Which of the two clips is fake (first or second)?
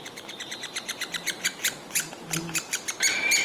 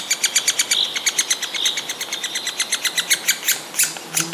first